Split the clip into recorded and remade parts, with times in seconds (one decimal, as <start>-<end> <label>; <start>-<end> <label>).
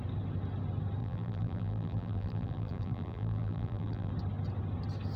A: 0.0-1.0 recorded; 1.0-4.1 remade; 4.1-5.2 recorded